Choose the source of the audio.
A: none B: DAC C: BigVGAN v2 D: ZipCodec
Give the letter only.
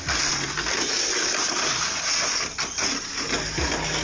A